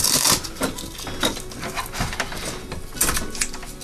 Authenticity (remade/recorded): recorded